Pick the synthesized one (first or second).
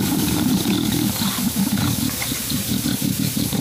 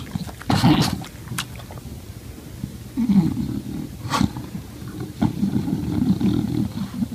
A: first